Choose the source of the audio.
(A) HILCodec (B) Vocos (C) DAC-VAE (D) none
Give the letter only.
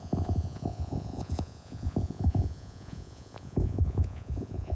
B